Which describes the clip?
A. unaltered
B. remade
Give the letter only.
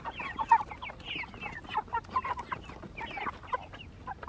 A